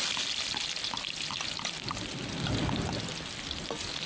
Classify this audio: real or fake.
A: real